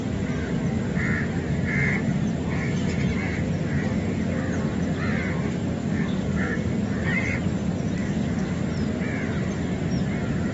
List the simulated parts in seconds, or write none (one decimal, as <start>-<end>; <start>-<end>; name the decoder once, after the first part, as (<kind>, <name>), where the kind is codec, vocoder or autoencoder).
5.8-6.7 (codec, DAC); 8.0-8.6